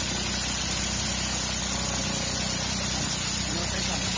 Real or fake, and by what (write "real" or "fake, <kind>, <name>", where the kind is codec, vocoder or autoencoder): real